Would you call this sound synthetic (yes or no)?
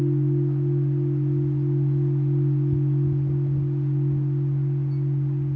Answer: no